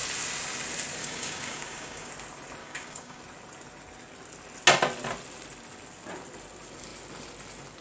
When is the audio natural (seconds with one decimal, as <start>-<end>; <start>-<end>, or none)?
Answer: 0.0-1.0; 2.1-2.6; 3.2-7.8